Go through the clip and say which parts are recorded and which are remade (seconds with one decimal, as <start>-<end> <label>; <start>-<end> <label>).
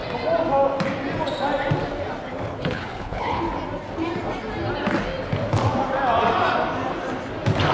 0.0-2.5 recorded; 2.5-3.4 remade; 3.4-7.7 recorded